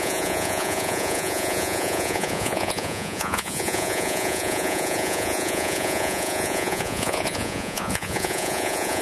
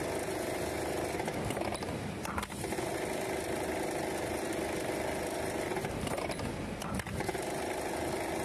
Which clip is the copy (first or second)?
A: first